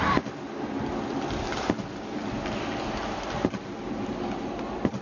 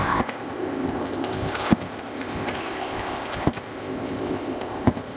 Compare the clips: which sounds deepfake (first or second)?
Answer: second